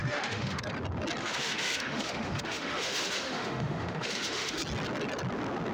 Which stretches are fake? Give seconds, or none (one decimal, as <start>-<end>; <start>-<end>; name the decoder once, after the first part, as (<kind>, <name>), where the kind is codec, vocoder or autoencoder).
0.0-0.6 (autoencoder, DAC-VAE); 1.2-4.6